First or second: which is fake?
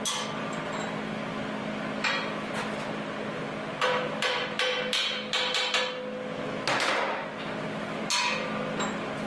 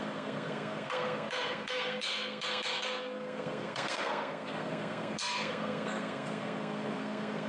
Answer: second